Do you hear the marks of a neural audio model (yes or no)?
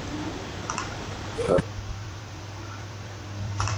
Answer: yes